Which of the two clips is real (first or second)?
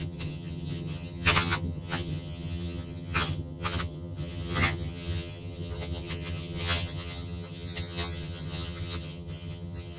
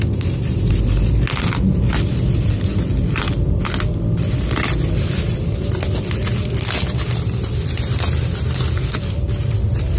second